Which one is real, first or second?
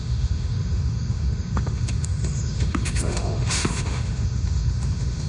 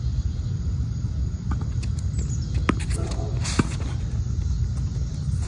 second